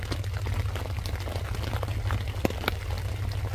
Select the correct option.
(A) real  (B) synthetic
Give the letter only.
A